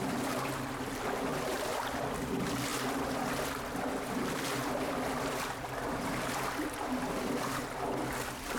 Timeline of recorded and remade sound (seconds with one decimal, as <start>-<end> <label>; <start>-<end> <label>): 0.0-2.7 remade; 2.7-4.8 recorded; 4.8-8.6 remade